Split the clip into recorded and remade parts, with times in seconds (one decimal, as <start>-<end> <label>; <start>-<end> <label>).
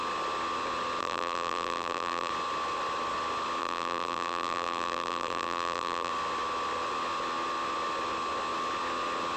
0.0-1.0 recorded; 1.0-2.3 remade; 2.3-3.6 recorded; 3.6-6.1 remade; 6.1-9.4 recorded